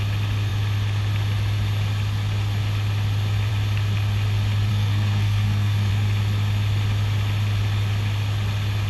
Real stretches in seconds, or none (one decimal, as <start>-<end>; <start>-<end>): 0.0-4.7; 5.9-8.9